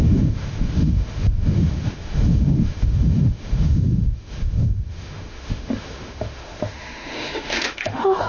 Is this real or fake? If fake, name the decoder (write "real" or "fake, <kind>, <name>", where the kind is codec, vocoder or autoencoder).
fake, autoencoder, DAC-VAE